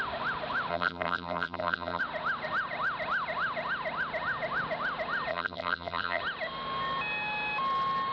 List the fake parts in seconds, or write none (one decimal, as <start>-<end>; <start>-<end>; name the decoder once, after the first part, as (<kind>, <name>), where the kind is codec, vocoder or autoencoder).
0.7-2.0 (vocoder, BigVGAN v2); 5.3-6.2